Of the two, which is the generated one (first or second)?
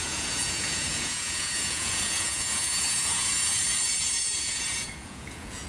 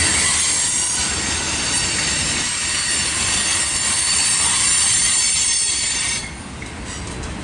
first